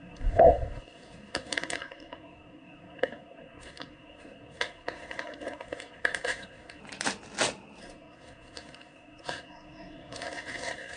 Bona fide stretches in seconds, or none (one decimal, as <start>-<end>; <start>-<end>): 6.8-7.8

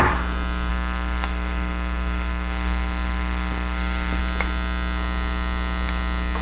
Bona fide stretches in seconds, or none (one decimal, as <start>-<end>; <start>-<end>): 0.0-0.7; 4.2-6.4

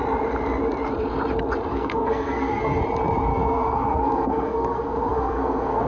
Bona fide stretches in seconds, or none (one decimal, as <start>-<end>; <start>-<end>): 0.0-1.7; 2.8-3.3

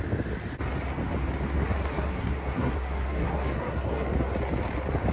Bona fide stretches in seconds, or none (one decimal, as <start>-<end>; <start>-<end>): 0.0-1.6; 4.1-5.1

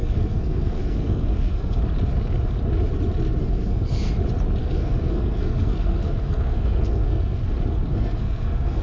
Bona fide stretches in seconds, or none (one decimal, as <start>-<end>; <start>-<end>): 1.8-3.4; 4.1-4.6; 7.4-7.9

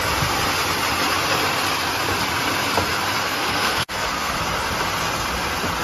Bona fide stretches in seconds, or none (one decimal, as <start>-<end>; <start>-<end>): 0.0-3.2; 4.4-5.8

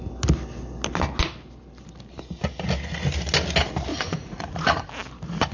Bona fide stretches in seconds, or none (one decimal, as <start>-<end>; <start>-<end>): 0.0-3.9; 4.9-5.5

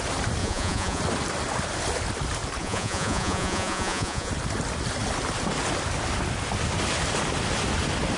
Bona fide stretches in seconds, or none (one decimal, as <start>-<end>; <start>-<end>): 0.0-0.4; 1.0-2.6; 4.3-8.2